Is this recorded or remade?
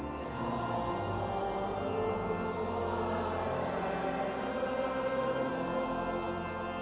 recorded